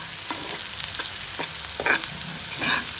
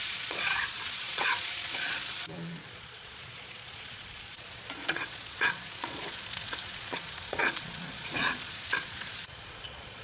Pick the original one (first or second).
first